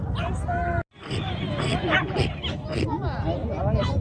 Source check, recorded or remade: recorded